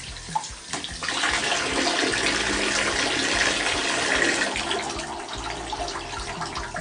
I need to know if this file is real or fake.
real